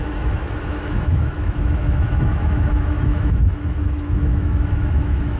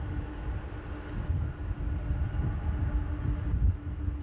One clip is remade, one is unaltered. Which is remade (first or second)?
first